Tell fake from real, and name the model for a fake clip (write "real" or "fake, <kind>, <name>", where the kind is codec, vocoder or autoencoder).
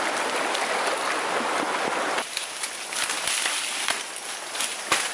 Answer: real